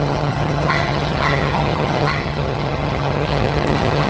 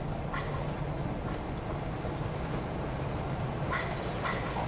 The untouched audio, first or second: second